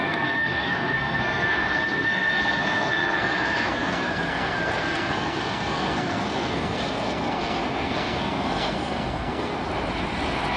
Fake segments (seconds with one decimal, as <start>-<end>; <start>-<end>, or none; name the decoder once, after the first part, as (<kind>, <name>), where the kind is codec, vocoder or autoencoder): 0.0-9.5 (codec, SNAC)